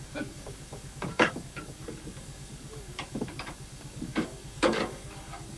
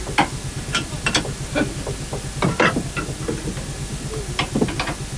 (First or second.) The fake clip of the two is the first